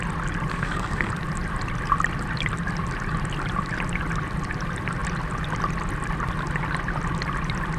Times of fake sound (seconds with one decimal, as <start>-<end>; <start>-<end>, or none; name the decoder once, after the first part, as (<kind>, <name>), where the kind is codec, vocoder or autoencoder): 0.5-1.1 (codec, SNAC)